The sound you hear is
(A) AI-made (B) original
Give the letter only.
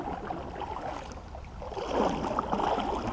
B